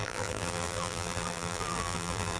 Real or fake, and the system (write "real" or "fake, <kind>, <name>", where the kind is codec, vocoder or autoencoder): fake, vocoder, BigVGAN v2